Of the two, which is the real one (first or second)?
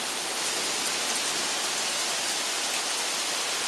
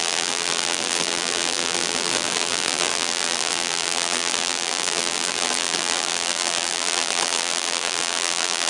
first